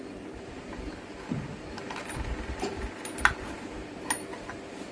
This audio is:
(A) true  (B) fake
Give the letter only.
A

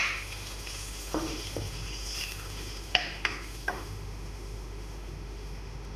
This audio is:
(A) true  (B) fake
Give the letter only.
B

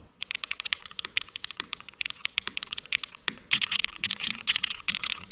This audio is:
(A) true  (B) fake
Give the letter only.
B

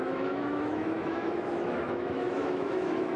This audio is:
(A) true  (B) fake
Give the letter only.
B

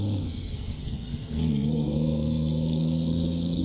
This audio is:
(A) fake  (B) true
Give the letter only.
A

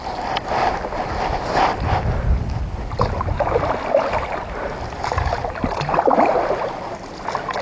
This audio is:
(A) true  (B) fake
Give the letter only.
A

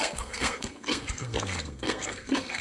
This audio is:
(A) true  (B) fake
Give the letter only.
B